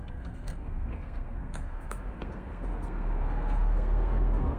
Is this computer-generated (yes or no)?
yes